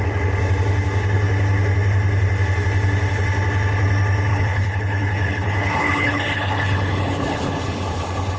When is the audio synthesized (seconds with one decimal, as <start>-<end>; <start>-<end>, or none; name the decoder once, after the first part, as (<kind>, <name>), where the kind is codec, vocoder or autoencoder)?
4.3-8.4 (codec, HILCodec)